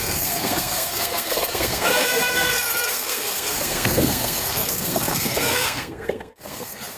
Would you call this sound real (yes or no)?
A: no